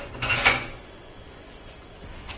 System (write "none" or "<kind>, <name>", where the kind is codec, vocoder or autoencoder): vocoder, Vocos